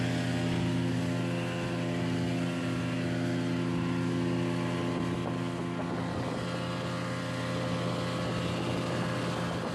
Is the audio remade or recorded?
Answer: recorded